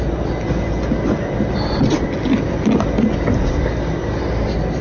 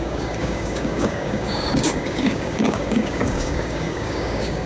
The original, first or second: first